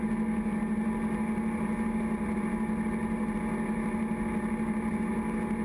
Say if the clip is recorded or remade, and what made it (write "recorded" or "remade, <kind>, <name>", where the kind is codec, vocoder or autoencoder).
recorded